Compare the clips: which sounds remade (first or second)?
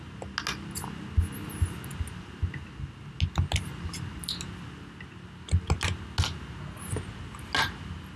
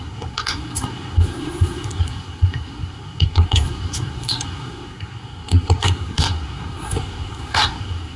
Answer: second